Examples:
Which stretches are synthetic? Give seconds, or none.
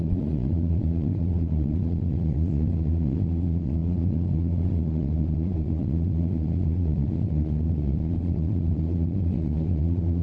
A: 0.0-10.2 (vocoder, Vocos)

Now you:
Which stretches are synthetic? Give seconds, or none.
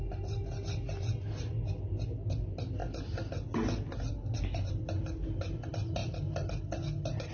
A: none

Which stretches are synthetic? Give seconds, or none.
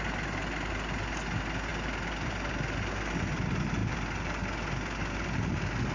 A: none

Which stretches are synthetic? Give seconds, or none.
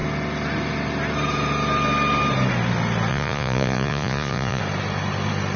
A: 3.1-4.6 (vocoder, Vocos)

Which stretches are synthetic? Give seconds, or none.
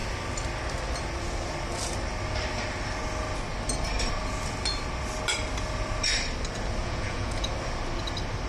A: 6.8-7.5 (vocoder, Vocos)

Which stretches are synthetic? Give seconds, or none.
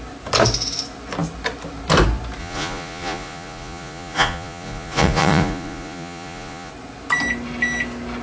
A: 2.4-6.7 (vocoder, Vocos)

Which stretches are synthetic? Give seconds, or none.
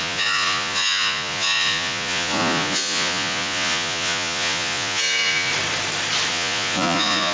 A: 0.0-5.5 (vocoder, Vocos); 6.3-7.3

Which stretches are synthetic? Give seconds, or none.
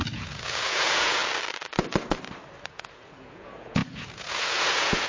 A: 0.0-1.2 (vocoder, Vocos); 2.7-5.1